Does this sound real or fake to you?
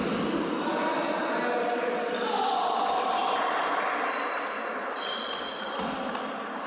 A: real